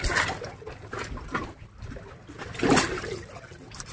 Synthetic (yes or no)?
no